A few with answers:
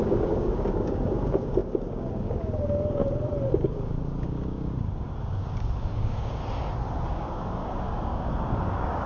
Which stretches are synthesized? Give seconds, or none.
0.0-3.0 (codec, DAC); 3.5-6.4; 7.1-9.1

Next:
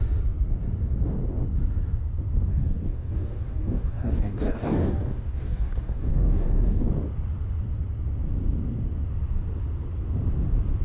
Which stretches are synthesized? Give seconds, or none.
2.5-6.9 (codec, DAC)

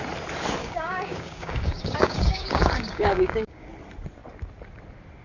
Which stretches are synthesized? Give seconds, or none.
0.6-3.7 (codec, DAC)

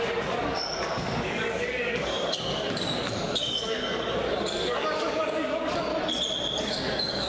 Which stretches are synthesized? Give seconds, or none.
0.0-5.9 (codec, DAC); 6.6-7.3